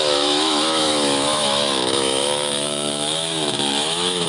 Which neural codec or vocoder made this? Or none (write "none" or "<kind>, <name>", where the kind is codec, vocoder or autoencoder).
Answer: autoencoder, DAC-VAE